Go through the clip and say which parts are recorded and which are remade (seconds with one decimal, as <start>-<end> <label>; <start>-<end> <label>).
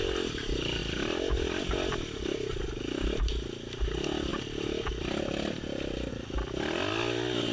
0.0-0.8 recorded; 0.8-1.6 remade; 1.6-4.3 recorded; 4.3-6.1 remade; 6.1-7.5 recorded